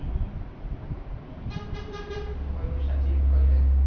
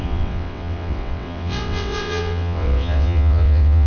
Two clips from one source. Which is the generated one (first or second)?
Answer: second